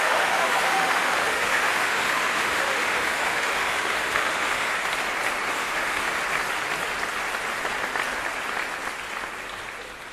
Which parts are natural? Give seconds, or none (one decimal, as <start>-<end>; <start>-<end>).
4.7-5.5; 6.2-10.1